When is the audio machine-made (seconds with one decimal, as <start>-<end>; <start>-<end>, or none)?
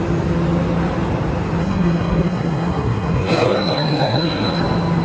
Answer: 1.6-4.6